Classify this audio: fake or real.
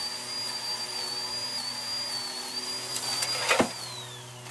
real